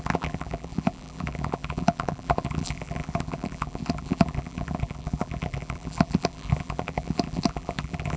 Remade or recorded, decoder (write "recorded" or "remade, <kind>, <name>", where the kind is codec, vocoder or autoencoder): remade, vocoder, BigVGAN v2